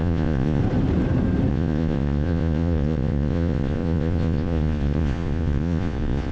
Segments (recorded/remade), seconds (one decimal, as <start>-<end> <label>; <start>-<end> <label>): 0.0-0.6 remade; 0.6-1.5 recorded; 1.5-6.3 remade

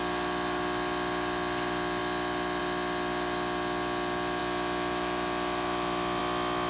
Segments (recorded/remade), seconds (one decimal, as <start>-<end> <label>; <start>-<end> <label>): 0.0-6.7 recorded